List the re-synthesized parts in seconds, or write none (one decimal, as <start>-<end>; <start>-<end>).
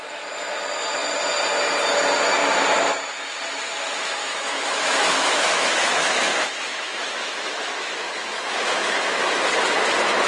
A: 4.2-9.2